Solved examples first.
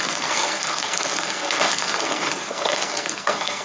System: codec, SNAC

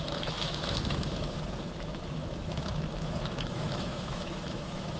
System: autoencoder, DAC-VAE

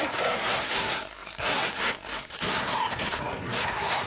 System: codec, SNAC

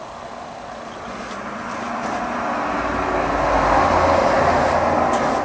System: none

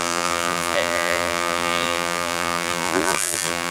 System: vocoder, BigVGAN v2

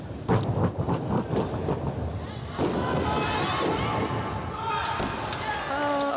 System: none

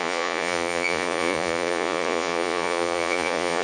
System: vocoder, Vocos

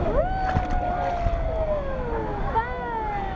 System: none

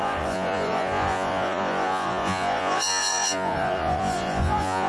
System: vocoder, Vocos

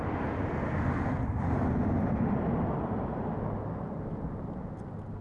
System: none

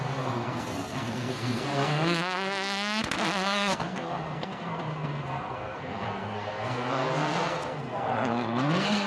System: codec, SNAC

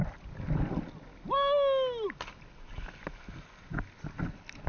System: none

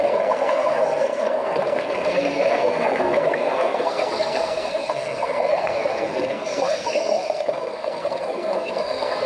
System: codec, SNAC